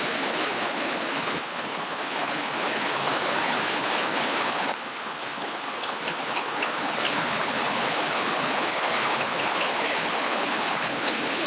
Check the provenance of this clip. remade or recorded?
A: remade